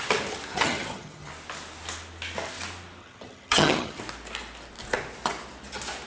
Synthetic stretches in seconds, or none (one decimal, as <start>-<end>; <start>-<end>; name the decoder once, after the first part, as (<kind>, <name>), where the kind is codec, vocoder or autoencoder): 0.5-1.3 (vocoder, HiFi-GAN); 3.0-4.0

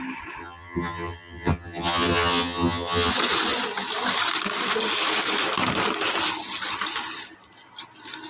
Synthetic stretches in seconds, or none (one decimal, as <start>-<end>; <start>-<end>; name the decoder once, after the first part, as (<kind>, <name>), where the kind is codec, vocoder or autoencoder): 0.4-3.1 (vocoder, HiFi-GAN)

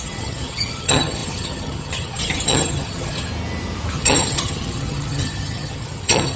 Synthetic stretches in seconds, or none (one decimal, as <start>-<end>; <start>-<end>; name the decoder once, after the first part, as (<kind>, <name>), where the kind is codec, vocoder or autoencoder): 0.0-3.3 (vocoder, HiFi-GAN); 3.9-6.4